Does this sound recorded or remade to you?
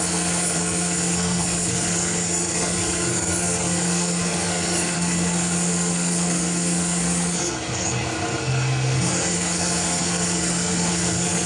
remade